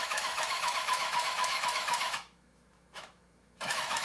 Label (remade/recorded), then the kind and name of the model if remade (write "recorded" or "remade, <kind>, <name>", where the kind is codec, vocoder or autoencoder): remade, autoencoder, DAC-VAE